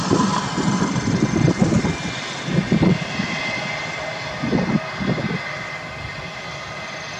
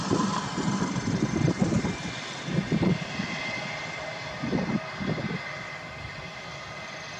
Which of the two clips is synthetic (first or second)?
second